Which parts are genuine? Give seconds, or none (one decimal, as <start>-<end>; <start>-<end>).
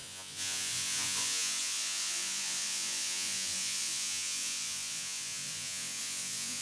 none